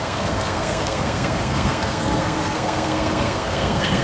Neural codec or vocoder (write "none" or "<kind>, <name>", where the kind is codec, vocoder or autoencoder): codec, SNAC